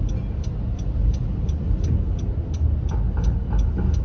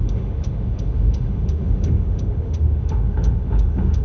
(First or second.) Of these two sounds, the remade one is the second